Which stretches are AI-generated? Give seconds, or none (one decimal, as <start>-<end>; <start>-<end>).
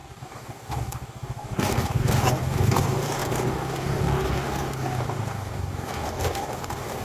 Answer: 0.0-7.0